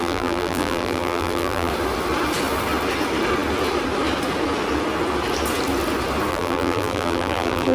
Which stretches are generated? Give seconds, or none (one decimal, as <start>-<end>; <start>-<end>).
0.0-1.7; 6.3-7.7